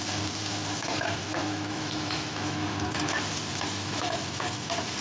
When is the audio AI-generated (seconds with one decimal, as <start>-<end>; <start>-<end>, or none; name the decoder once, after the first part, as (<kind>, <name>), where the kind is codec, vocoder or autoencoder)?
1.4-2.7 (autoencoder, DAC-VAE); 3.7-4.2